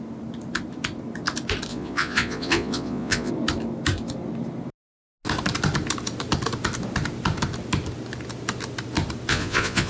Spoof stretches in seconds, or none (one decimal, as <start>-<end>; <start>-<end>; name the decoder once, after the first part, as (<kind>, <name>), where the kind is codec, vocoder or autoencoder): 1.7-3.3 (vocoder, Vocos); 9.3-9.9